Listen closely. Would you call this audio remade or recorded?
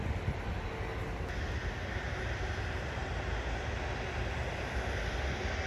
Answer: recorded